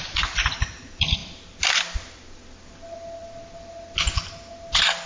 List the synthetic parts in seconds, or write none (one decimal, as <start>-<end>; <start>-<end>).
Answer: none